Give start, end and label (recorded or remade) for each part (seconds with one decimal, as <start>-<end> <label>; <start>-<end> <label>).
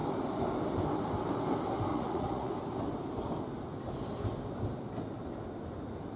0.0-1.9 recorded; 1.9-2.5 remade; 2.5-6.2 recorded